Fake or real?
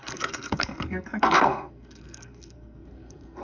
fake